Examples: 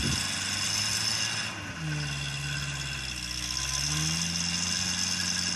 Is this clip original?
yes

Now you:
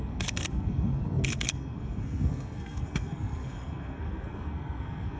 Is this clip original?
no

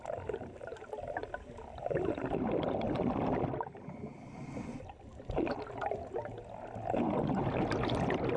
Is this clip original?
yes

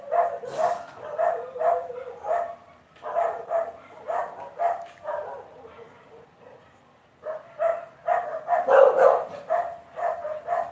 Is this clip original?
yes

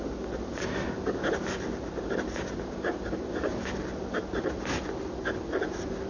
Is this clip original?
yes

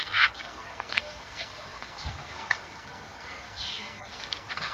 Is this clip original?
no